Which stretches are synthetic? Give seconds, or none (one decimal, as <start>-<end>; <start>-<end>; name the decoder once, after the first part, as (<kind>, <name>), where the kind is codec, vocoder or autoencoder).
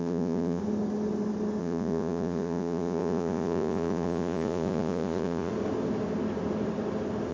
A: 0.0-0.6 (vocoder, Vocos); 1.6-5.5